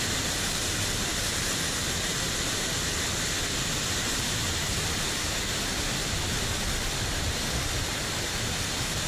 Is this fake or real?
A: real